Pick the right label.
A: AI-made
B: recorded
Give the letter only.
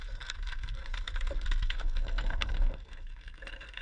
A